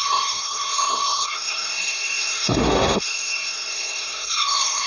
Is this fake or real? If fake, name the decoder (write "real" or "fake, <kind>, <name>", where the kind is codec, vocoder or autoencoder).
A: fake, codec, SNAC